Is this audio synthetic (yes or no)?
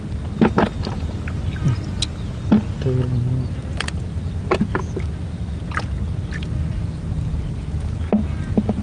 no